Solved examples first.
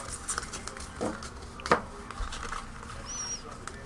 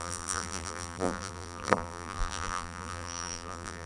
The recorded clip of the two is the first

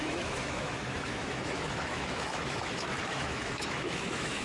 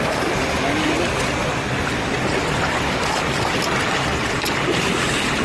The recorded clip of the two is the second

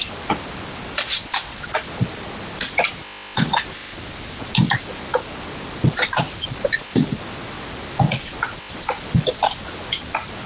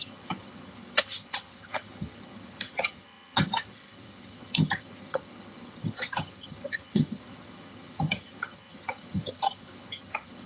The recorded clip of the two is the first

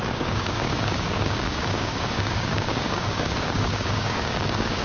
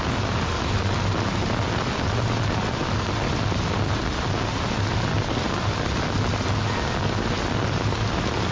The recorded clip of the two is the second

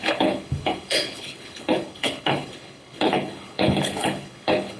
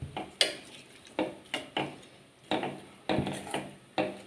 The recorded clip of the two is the second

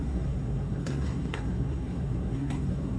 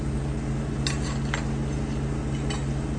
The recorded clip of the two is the second